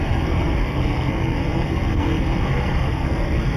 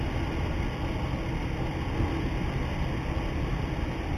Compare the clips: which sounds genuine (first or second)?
second